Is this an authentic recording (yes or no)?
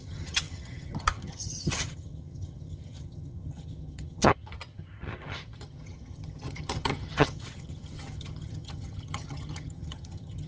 no